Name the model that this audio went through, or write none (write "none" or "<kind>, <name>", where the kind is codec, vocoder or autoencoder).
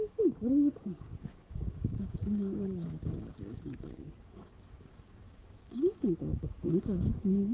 codec, DAC